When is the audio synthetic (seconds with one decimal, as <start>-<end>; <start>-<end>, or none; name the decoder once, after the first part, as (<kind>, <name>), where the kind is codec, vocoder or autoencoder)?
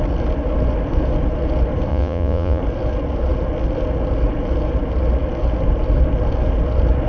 1.9-2.6 (vocoder, Vocos)